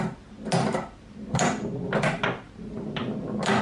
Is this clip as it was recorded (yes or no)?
yes